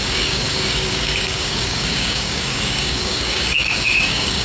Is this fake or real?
fake